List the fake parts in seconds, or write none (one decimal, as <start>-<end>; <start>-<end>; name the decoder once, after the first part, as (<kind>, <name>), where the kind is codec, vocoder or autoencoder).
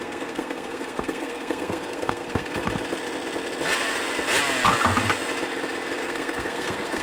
0.0-2.6 (codec, SNAC); 6.0-7.0